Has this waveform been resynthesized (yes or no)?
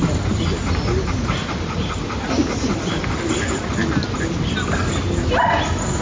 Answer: no